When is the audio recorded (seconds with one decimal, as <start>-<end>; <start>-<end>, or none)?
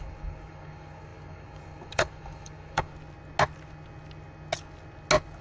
2.9-5.4